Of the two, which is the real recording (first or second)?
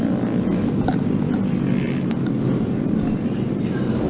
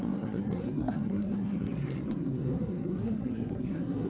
first